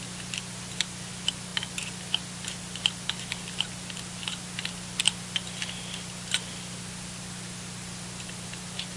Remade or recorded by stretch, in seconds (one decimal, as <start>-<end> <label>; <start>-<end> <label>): 0.0-1.5 recorded; 1.5-6.8 remade; 6.8-9.0 recorded